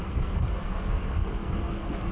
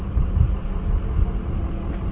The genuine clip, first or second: second